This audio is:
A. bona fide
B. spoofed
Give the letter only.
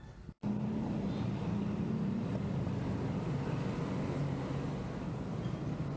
A